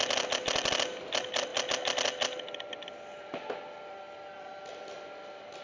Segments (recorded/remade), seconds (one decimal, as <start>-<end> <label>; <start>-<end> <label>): 0.0-5.6 recorded